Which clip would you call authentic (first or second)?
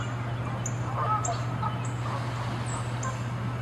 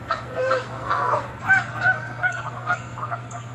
first